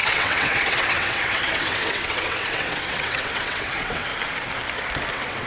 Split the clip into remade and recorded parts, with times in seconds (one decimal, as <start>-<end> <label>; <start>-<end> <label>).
0.0-4.1 remade; 4.1-5.1 recorded; 5.1-5.5 remade